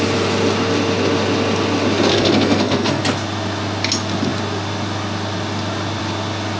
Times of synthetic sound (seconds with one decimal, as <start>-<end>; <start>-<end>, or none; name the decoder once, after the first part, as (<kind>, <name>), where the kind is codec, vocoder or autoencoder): 2.1-3.0 (codec, SNAC)